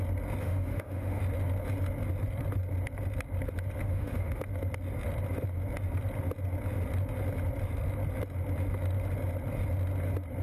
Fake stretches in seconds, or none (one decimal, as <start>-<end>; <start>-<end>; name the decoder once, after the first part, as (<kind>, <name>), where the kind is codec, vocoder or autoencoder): 0.4-1.2 (autoencoder, DAC-VAE); 3.8-4.4